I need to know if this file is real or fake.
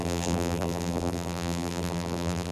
fake